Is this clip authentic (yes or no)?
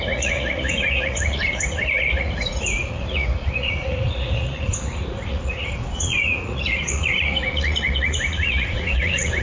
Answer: no